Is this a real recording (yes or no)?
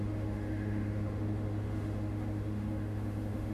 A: no